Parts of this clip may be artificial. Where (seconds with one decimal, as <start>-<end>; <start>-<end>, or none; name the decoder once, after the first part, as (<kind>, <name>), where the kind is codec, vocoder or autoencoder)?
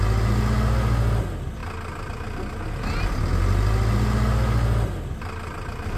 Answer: none